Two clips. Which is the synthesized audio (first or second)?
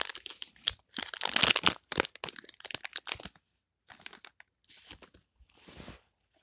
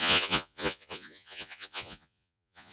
second